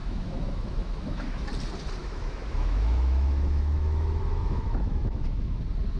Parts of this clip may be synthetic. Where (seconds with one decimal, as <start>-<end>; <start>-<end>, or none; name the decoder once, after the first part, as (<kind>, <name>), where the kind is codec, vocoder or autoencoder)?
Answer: 0.0-1.5 (autoencoder, DAC-VAE); 2.0-5.6